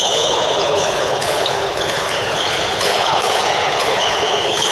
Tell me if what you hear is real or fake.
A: fake